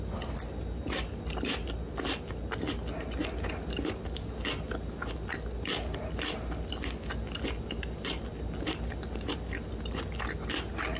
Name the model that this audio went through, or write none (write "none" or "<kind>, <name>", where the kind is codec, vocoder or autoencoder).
none